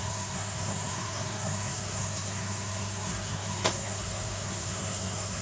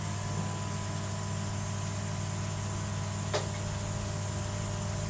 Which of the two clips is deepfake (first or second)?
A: first